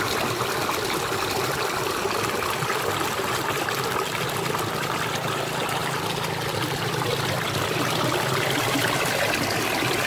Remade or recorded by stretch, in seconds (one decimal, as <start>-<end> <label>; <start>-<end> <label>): 0.0-10.1 recorded